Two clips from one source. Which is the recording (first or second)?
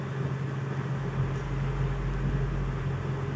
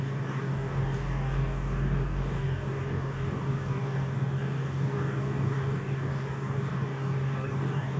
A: first